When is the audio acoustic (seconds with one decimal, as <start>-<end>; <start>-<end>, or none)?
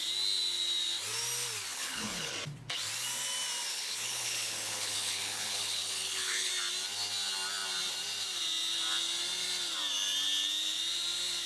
0.0-1.7; 2.3-3.7; 6.5-11.5